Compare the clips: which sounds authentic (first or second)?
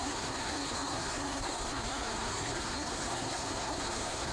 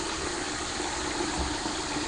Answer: second